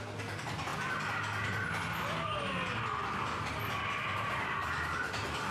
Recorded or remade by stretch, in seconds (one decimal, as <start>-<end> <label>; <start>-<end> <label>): 0.0-5.5 recorded